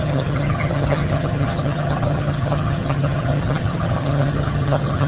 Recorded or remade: remade